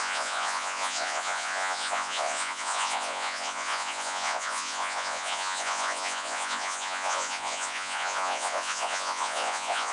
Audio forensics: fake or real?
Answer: fake